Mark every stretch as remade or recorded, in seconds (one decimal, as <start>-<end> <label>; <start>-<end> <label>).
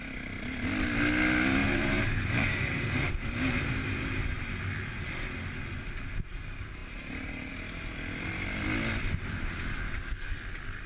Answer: 0.0-1.6 recorded; 1.6-3.1 remade; 3.1-6.8 recorded; 6.8-7.5 remade; 7.5-10.9 recorded